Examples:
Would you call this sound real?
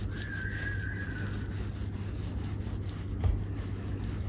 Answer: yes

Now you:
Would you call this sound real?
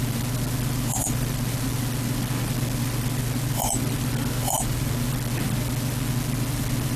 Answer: yes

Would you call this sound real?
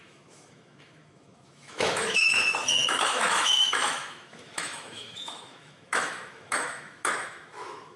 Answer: no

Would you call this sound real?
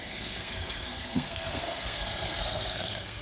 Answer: no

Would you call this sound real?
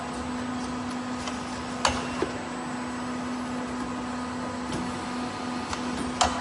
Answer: yes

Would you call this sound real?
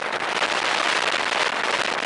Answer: yes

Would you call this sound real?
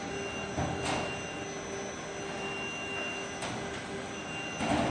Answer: yes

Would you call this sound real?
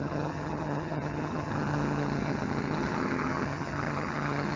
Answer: no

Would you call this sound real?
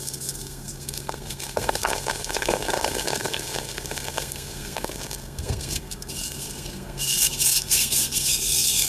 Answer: no